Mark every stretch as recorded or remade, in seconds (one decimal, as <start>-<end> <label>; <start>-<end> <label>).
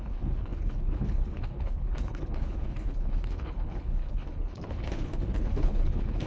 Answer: 0.0-6.3 remade